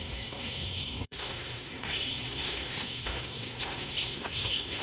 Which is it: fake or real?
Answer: fake